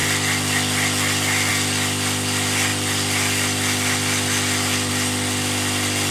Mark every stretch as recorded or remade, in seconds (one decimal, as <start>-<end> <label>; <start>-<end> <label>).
0.0-6.1 recorded